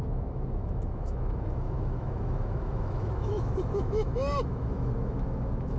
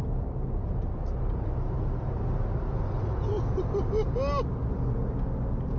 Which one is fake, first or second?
first